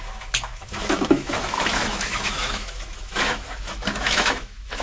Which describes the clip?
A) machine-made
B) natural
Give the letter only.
A